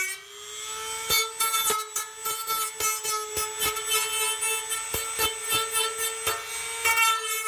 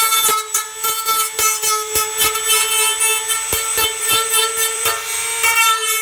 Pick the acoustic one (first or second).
first